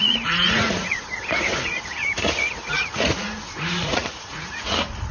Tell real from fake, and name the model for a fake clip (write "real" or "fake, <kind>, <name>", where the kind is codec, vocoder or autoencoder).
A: fake, vocoder, Vocos